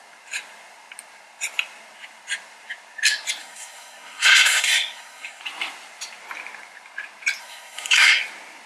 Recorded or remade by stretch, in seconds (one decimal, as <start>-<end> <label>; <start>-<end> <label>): 0.0-3.4 recorded; 3.4-5.4 remade; 5.4-7.4 recorded; 7.4-8.2 remade; 8.2-8.7 recorded